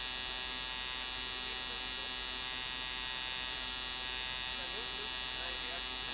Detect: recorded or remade recorded